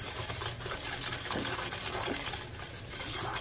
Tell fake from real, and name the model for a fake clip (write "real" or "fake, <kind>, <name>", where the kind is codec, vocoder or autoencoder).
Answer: real